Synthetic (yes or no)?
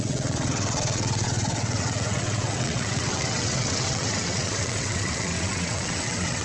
yes